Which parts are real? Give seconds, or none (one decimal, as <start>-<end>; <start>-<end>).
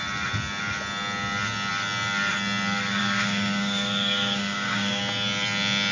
0.0-3.0; 5.0-5.9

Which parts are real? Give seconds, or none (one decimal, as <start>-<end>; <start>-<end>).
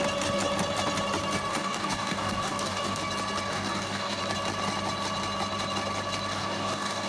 0.0-1.5; 3.0-3.5; 4.2-6.3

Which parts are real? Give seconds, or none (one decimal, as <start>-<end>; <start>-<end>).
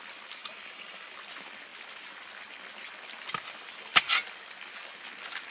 0.0-0.4; 1.1-5.5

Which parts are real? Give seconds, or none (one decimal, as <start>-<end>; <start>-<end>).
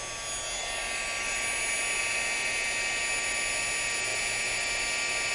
0.0-5.3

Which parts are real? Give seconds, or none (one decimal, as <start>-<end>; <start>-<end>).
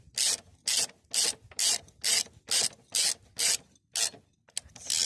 0.0-5.0